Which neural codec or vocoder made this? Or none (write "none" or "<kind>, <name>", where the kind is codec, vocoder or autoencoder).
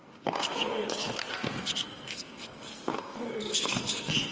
codec, SNAC